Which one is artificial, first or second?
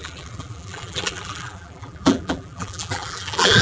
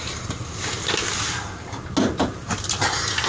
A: first